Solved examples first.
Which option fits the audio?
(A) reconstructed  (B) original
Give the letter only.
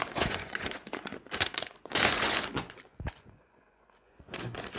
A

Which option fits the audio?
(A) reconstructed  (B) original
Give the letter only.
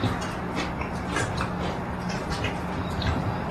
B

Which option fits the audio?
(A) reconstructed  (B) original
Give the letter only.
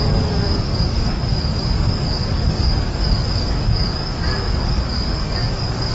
A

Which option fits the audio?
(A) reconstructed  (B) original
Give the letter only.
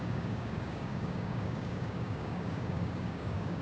A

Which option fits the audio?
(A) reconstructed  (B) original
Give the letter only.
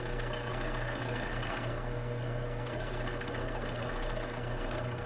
A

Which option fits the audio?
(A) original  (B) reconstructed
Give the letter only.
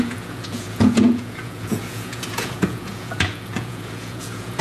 B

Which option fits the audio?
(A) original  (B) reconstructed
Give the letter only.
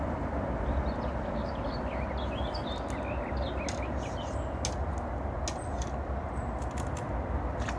A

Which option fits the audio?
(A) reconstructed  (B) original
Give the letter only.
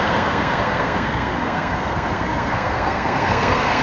A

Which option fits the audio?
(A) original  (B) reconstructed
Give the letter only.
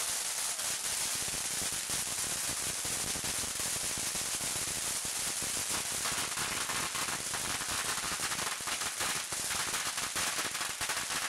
A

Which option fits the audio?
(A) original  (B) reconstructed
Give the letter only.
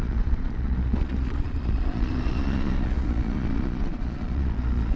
B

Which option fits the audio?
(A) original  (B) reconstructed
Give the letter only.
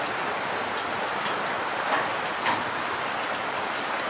A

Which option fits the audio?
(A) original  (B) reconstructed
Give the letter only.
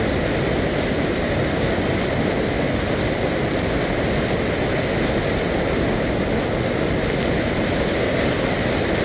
A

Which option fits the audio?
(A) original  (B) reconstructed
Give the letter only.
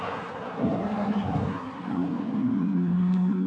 B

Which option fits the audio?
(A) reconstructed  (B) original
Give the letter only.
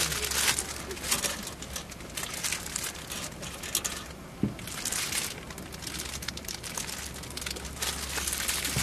B